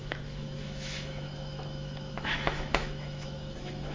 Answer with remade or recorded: remade